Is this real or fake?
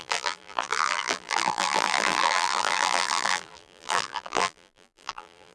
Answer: fake